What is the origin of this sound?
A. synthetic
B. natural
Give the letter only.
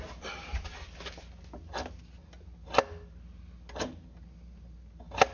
B